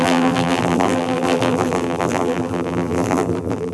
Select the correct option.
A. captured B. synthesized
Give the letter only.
B